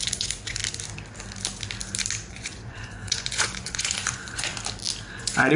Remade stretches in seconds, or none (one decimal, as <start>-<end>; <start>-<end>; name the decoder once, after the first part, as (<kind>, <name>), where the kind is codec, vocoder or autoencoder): 0.0-0.6 (vocoder, Vocos); 2.3-4.5; 5.1-5.6